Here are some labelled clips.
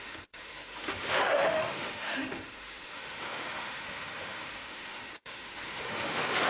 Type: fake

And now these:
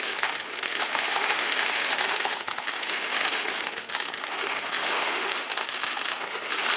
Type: fake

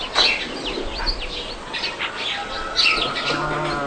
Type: real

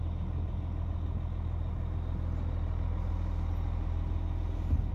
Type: real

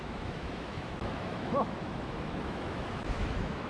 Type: fake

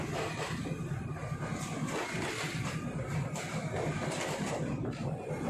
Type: real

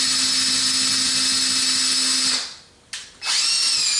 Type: real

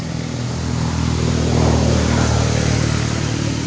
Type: real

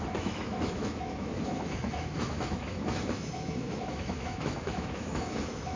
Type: fake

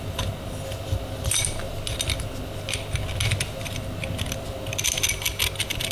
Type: real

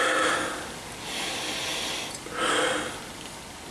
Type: real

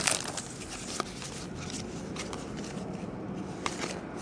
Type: real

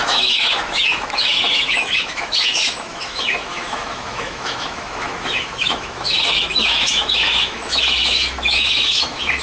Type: fake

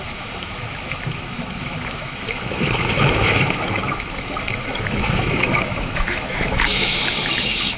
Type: fake